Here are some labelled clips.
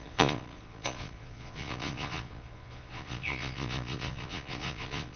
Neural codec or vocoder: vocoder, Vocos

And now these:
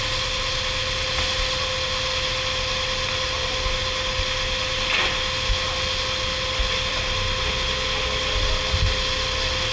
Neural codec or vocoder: none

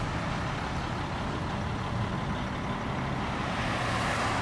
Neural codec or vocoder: none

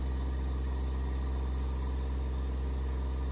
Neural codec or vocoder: none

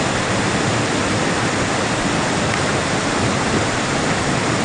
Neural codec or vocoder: none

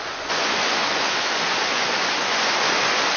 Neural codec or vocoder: vocoder, Vocos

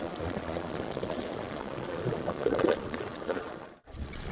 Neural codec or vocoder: vocoder, Vocos